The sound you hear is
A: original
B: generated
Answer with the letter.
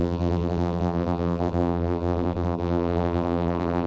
B